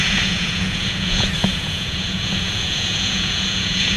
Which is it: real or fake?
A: fake